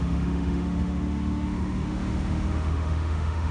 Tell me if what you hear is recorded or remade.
remade